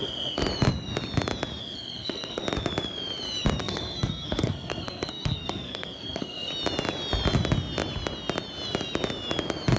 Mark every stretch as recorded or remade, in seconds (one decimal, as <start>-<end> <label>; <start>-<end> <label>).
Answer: 0.0-0.4 remade; 0.4-1.6 recorded; 1.6-2.4 remade; 2.4-3.6 recorded; 3.6-6.5 remade; 6.5-9.8 recorded